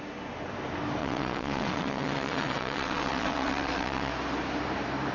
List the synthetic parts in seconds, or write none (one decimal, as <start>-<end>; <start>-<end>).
1.0-4.1